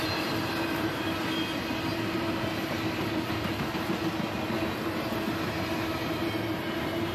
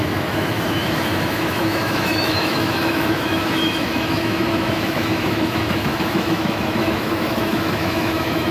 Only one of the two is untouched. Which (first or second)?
first